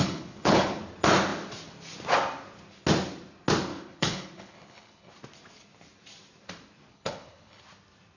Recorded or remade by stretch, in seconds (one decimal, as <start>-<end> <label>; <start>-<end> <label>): 0.0-0.8 remade; 0.8-3.7 recorded; 3.7-5.1 remade; 5.1-6.9 recorded; 6.9-7.6 remade; 7.6-8.2 recorded